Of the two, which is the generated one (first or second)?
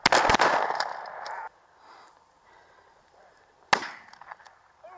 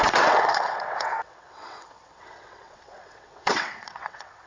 second